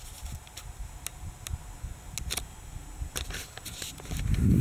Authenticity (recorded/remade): recorded